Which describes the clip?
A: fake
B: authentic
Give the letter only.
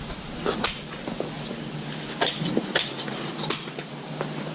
B